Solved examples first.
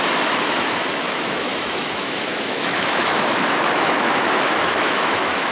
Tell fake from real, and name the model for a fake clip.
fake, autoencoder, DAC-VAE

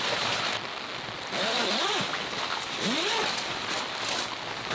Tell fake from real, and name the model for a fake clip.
real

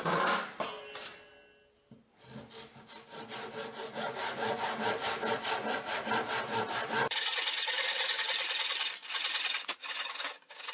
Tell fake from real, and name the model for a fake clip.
real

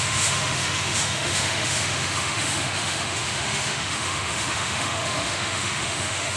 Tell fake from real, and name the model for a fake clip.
fake, autoencoder, DAC-VAE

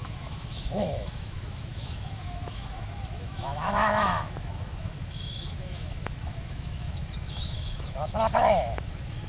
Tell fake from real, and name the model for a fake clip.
fake, autoencoder, DAC-VAE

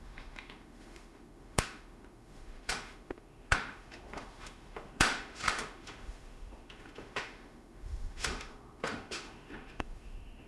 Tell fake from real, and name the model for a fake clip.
fake, autoencoder, DAC-VAE